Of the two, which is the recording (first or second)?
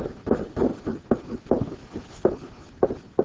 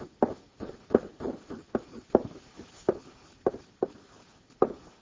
first